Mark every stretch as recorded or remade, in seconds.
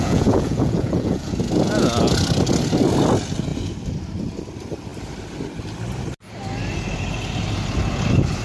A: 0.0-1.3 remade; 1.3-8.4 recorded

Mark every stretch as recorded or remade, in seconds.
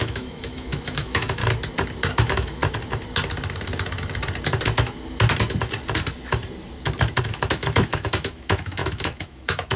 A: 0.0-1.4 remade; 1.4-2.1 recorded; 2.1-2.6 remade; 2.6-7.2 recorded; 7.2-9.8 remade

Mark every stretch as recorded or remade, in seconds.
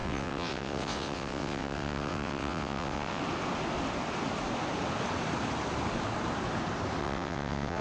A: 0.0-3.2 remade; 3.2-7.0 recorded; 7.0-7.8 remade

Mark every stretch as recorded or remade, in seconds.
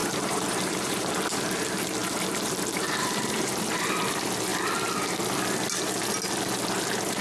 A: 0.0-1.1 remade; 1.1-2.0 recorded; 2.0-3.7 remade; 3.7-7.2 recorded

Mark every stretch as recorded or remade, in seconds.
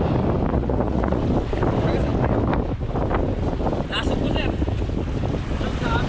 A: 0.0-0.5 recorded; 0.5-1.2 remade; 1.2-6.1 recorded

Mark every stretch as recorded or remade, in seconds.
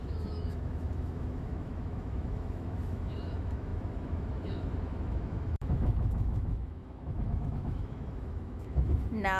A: 0.0-9.4 remade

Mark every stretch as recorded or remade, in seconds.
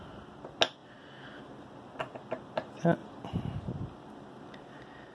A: 0.0-0.8 recorded; 0.8-1.4 remade; 1.4-3.0 recorded; 3.0-3.7 remade; 3.7-5.1 recorded